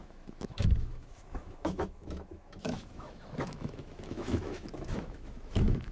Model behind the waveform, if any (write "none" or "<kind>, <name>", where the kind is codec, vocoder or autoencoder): autoencoder, DAC-VAE